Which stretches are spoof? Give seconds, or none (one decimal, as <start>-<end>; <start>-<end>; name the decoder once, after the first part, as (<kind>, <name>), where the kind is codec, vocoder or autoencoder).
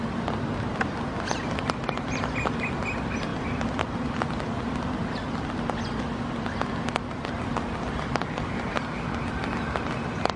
none